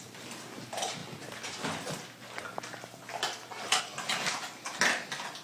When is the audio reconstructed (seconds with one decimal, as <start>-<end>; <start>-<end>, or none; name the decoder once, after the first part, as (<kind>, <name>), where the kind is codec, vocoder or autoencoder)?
none